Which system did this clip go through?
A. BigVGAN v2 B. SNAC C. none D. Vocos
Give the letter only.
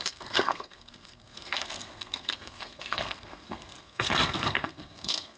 B